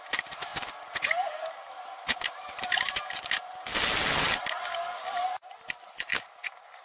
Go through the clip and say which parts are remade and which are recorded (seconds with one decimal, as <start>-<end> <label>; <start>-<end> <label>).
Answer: 0.0-0.5 remade; 0.5-2.1 recorded; 2.1-3.7 remade; 3.7-6.3 recorded; 6.3-6.8 remade